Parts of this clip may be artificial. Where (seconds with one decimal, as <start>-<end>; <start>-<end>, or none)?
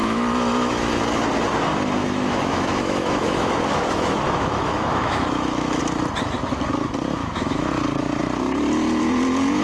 0.0-0.9; 2.0-5.8; 7.2-7.7